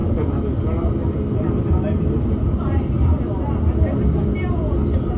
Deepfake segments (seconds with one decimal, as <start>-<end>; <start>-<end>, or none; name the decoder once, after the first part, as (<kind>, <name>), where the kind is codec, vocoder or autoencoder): none